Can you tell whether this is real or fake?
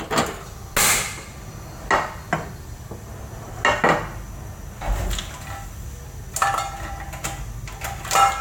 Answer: real